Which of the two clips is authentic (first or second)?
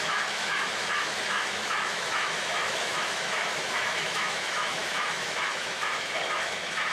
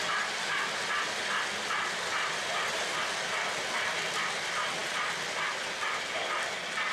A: second